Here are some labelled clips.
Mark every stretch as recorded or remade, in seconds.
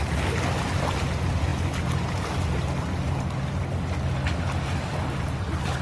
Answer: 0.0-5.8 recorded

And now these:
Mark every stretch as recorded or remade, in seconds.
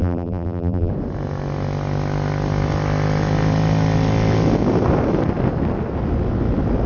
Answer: 0.0-0.9 remade; 0.9-6.9 recorded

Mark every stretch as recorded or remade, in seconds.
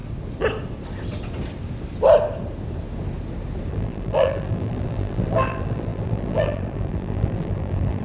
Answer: 0.0-3.7 recorded; 3.7-8.0 remade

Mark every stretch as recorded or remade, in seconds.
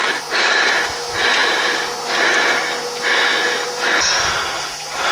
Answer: 0.0-5.1 recorded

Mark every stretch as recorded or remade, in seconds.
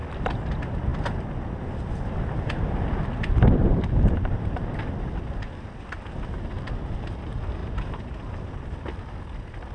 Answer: 0.0-3.6 recorded; 3.6-4.7 remade; 4.7-7.6 recorded; 7.6-8.5 remade; 8.5-9.7 recorded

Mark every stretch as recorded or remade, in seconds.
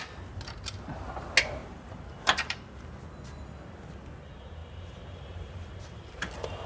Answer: 0.0-1.6 recorded; 1.6-2.9 remade; 2.9-4.6 recorded; 4.6-6.3 remade; 6.3-6.7 recorded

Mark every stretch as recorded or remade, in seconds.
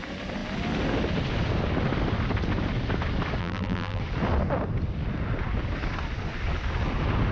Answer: 0.0-3.4 recorded; 3.4-4.0 remade; 4.0-7.3 recorded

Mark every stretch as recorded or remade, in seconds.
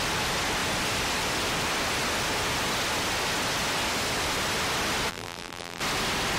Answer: 0.0-5.1 recorded; 5.1-5.8 remade; 5.8-6.4 recorded